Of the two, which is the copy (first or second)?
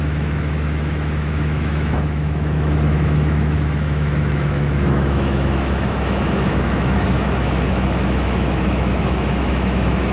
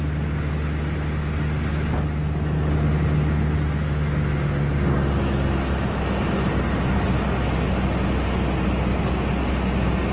first